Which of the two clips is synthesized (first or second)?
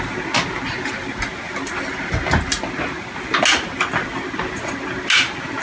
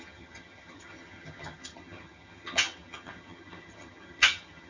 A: second